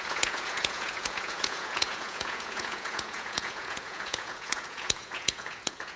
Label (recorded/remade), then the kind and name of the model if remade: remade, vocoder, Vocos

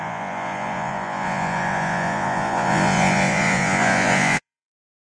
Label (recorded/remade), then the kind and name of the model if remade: remade, vocoder, Vocos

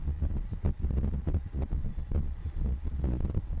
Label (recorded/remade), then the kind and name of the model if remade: remade, vocoder, Vocos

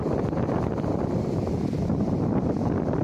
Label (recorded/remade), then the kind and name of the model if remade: recorded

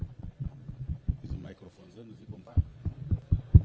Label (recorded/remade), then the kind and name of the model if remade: remade, vocoder, Vocos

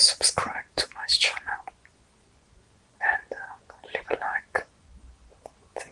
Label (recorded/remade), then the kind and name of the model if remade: remade, vocoder, Vocos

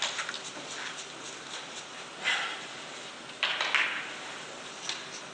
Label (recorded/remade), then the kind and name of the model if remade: recorded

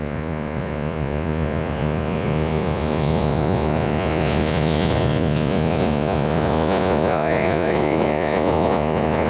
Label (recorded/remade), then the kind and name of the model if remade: remade, vocoder, Vocos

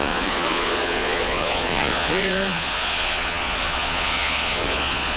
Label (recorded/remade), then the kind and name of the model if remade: remade, vocoder, Vocos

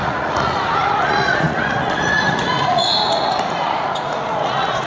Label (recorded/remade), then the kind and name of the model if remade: remade, vocoder, Vocos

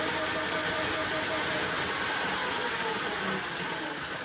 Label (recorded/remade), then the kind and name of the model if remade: recorded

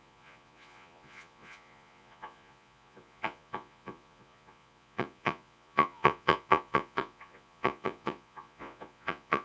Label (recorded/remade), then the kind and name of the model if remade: remade, vocoder, Vocos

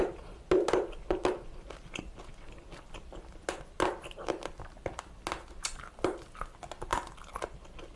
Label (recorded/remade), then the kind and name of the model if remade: recorded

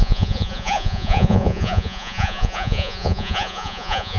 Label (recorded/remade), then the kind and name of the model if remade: remade, vocoder, Vocos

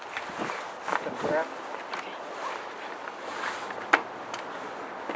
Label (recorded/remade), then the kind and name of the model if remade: recorded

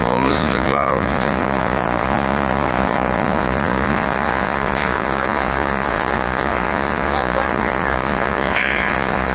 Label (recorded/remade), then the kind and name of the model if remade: remade, vocoder, Vocos